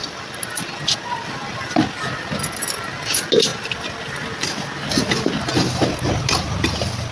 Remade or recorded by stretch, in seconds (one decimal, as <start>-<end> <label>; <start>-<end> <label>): 0.0-0.7 remade; 0.7-7.1 recorded